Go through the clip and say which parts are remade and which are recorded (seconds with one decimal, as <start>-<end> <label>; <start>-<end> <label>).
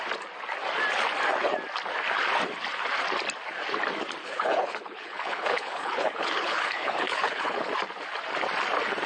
0.0-4.2 recorded; 4.2-7.7 remade; 7.7-9.1 recorded